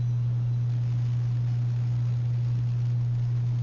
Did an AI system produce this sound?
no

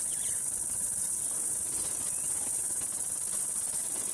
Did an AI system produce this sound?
yes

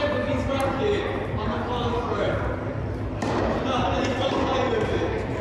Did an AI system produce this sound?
no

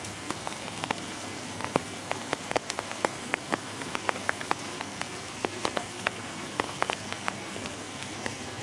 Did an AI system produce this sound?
yes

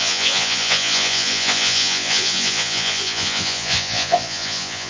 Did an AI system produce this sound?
yes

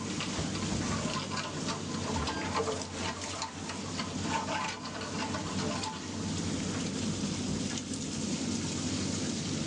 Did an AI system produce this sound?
no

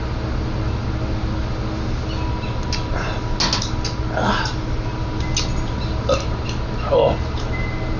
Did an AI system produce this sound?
no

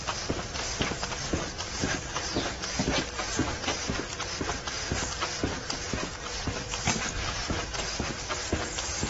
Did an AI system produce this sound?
no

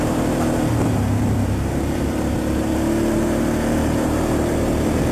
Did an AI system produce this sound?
yes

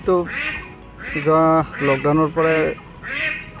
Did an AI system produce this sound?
yes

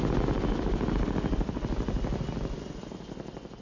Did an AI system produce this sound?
no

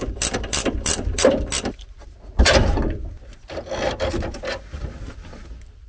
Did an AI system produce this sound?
no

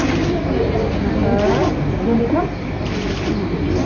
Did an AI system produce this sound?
no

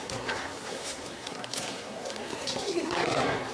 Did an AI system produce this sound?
yes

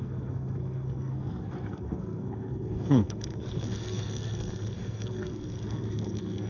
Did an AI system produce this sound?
yes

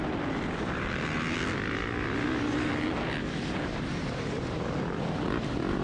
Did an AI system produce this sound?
no